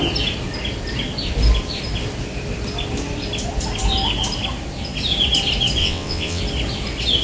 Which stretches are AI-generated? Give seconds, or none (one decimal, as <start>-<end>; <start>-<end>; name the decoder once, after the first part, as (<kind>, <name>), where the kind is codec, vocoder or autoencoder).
5.8-6.4 (vocoder, WaveNeXt)

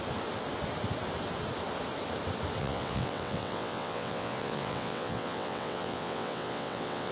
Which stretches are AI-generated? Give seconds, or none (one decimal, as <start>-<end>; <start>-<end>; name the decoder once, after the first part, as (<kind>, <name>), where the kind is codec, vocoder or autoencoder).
2.6-7.1 (vocoder, WaveNeXt)